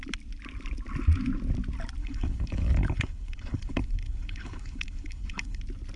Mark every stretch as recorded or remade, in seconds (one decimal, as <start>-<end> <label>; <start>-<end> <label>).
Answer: 0.0-2.0 recorded; 2.0-5.6 remade; 5.6-6.0 recorded